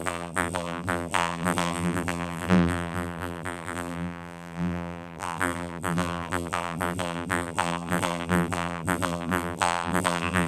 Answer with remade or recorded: remade